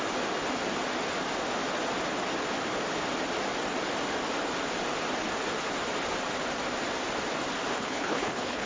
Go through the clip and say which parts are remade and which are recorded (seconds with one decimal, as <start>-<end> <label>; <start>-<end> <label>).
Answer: 0.0-7.7 recorded; 7.7-8.7 remade